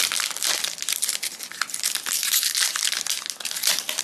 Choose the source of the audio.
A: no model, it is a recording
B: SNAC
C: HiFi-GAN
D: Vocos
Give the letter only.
A